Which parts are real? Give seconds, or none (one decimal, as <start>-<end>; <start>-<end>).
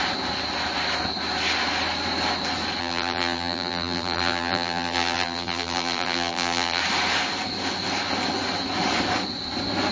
0.0-2.8; 6.8-9.9